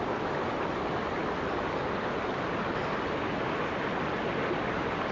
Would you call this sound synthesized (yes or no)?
no